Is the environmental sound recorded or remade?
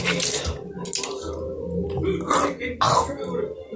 recorded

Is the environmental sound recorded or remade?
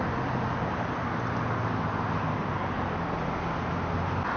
recorded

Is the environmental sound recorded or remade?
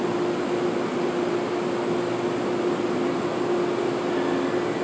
recorded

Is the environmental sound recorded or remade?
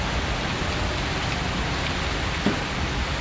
recorded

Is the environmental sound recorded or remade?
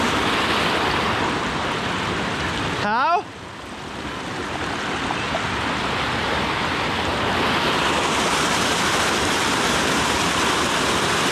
recorded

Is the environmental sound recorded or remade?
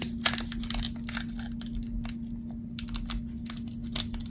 recorded